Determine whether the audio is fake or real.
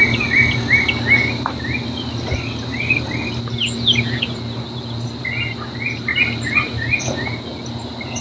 real